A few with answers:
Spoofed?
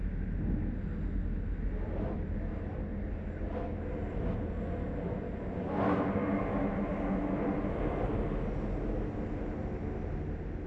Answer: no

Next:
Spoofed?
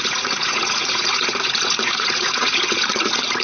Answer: yes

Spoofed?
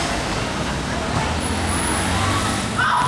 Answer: no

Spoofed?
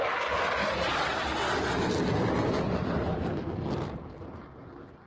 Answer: no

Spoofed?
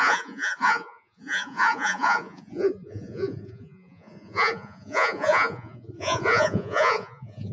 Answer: yes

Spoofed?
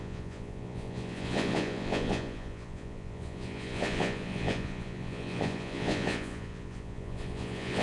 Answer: yes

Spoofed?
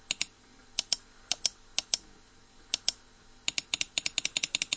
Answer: no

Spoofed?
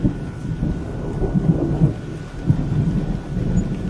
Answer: no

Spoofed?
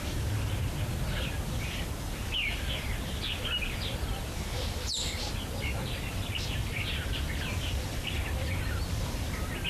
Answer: no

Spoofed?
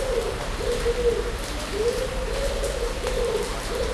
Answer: yes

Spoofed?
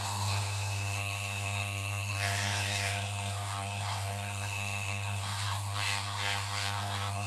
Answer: yes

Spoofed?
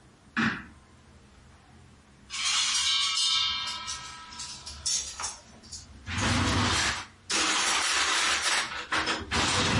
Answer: no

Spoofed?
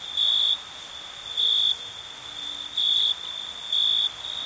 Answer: yes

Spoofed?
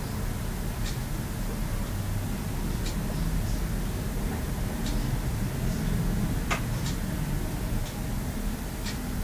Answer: no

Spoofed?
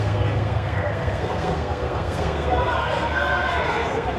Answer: yes